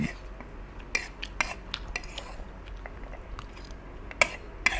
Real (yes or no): yes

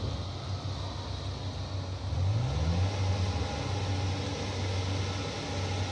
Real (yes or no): yes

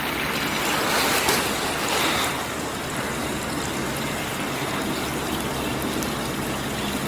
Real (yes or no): yes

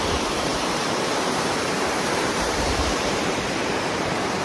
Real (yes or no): no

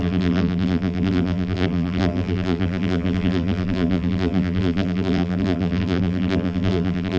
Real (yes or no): no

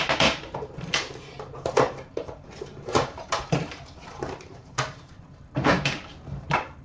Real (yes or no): no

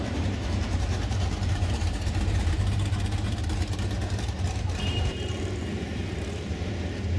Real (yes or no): no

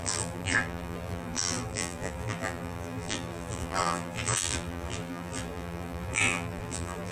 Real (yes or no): no